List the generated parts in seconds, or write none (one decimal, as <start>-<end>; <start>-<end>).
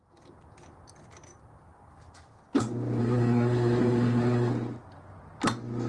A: 3.0-4.5